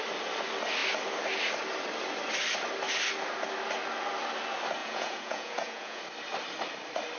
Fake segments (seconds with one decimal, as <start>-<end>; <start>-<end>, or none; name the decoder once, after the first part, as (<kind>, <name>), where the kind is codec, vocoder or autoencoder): 4.8-6.0 (vocoder, Vocos)

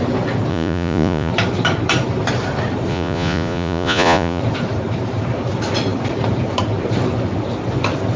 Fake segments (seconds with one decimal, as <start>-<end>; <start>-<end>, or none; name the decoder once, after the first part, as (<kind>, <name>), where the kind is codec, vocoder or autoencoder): 0.5-1.3 (vocoder, Vocos); 2.9-4.4

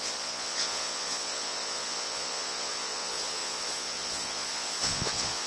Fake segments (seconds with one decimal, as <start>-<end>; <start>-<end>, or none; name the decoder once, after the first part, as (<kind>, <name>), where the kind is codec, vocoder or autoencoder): 0.0-5.5 (vocoder, Vocos)

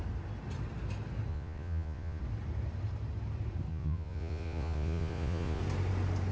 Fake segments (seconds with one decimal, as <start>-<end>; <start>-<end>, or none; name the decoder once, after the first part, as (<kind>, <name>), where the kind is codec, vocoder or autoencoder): 1.3-2.2 (vocoder, Vocos); 3.7-5.6

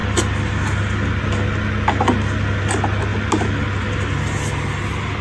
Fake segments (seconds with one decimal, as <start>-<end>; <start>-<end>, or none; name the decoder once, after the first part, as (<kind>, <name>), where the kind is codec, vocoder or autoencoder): none

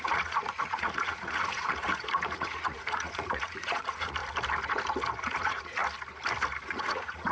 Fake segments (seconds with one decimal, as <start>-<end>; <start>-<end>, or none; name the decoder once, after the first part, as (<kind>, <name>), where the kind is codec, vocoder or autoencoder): 0.0-4.2 (vocoder, Vocos); 5.2-5.8; 6.7-7.3

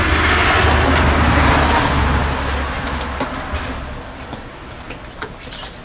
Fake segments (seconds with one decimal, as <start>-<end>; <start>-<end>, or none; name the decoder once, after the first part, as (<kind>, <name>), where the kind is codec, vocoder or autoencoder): none